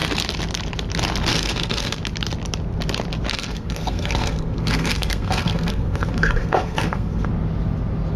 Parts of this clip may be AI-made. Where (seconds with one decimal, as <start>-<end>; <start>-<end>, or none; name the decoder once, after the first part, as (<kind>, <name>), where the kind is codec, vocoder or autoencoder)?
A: 1.3-2.0 (codec, SNAC); 3.3-7.3